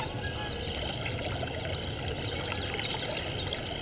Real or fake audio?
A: real